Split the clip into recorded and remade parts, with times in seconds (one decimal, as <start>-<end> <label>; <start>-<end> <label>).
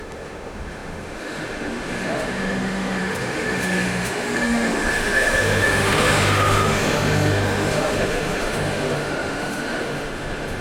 0.0-10.6 remade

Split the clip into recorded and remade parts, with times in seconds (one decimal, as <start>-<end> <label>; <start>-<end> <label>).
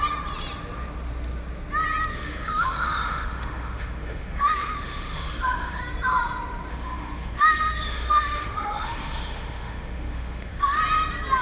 0.0-2.1 recorded; 2.1-5.8 remade; 5.8-6.7 recorded; 6.7-10.8 remade; 10.8-11.4 recorded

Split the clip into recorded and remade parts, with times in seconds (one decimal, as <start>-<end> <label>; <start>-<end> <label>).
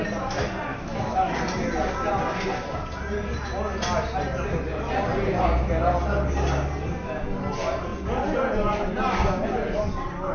0.0-0.7 recorded; 0.7-1.3 remade; 1.3-10.3 recorded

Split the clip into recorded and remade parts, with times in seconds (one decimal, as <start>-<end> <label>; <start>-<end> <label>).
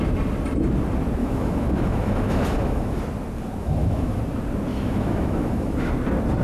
0.0-1.2 recorded; 1.2-3.0 remade; 3.0-3.6 recorded; 3.6-4.2 remade; 4.2-4.7 recorded; 4.7-5.9 remade; 5.9-6.4 recorded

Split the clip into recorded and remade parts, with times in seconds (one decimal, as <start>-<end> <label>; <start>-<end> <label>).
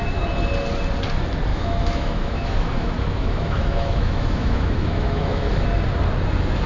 0.0-1.5 recorded; 1.5-5.5 remade; 5.5-6.7 recorded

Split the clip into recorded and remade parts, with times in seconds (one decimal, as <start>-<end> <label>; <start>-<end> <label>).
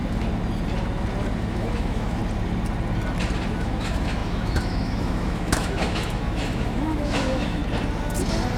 0.0-1.5 recorded; 1.5-2.2 remade; 2.2-3.6 recorded; 3.6-7.6 remade; 7.6-8.6 recorded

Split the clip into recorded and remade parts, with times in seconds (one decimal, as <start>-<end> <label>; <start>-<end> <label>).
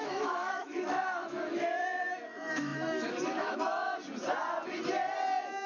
0.0-3.9 remade; 3.9-5.7 recorded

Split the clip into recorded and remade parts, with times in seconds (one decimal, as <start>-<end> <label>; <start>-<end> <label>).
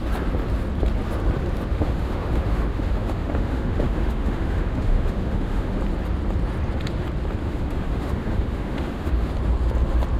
0.0-1.7 recorded; 1.7-5.8 remade; 5.8-7.4 recorded; 7.4-9.3 remade; 9.3-10.2 recorded